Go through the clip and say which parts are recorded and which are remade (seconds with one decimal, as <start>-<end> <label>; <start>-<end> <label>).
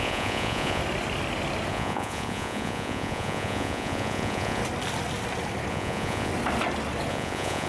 0.0-0.8 remade; 0.8-1.7 recorded; 1.7-4.6 remade; 4.6-5.7 recorded; 5.7-6.3 remade; 6.3-7.1 recorded; 7.1-7.7 remade